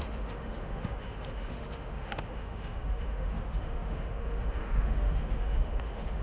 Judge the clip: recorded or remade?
remade